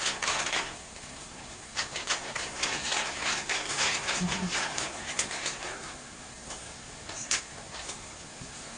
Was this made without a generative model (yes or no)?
no